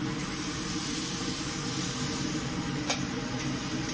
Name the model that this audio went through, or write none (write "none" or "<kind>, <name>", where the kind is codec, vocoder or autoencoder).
vocoder, BigVGAN v2